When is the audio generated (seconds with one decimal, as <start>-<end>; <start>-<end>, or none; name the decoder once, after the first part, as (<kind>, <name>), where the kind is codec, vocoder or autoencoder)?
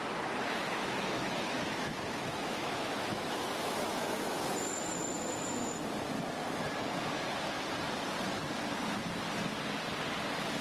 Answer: 0.6-4.5 (autoencoder, DAC-VAE)